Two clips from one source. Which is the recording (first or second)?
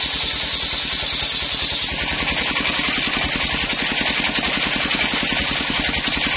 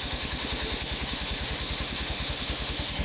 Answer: first